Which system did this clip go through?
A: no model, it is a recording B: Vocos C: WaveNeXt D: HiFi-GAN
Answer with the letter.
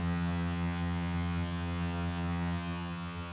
D